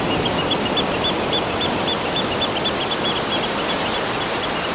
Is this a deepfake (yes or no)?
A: no